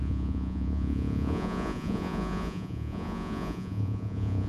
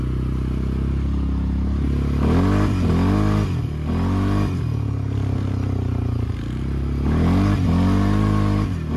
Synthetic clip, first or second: first